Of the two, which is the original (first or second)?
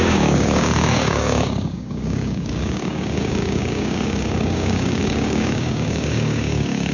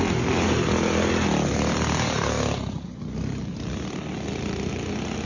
second